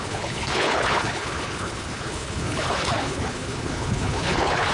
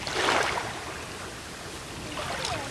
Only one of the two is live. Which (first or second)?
second